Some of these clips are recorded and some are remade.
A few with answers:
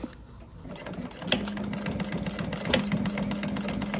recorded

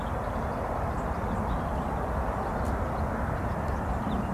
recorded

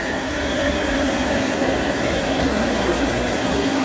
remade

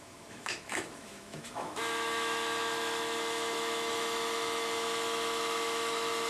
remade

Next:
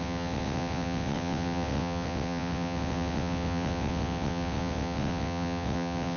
remade